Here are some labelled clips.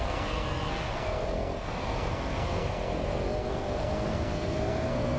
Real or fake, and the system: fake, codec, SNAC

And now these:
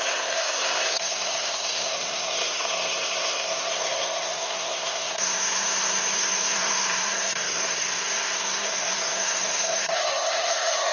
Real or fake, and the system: fake, codec, SNAC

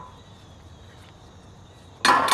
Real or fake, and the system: real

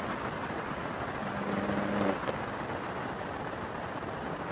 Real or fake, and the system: real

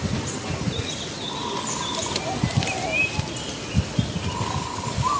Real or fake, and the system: real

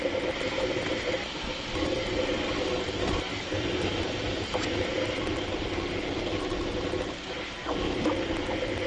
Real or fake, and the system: real